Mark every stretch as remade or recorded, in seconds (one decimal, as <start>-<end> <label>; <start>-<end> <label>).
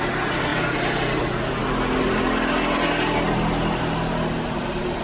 0.0-5.0 recorded